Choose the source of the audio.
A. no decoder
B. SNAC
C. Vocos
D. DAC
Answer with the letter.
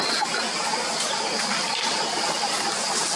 A